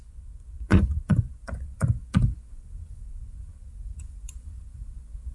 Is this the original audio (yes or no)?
no